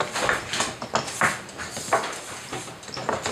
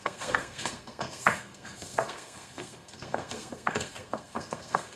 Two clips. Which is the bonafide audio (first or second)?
first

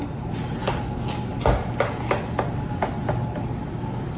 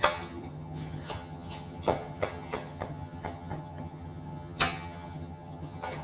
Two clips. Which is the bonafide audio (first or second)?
first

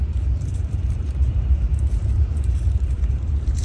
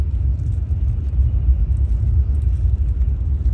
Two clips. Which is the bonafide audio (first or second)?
second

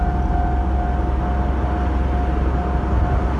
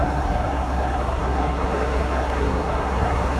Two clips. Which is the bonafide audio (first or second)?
first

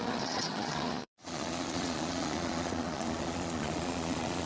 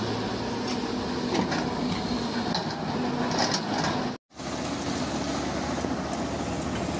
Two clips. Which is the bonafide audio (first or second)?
second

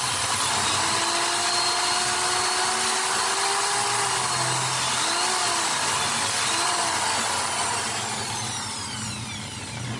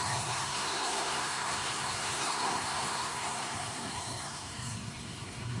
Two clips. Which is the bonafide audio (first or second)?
first